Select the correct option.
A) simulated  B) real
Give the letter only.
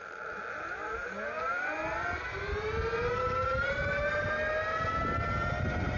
B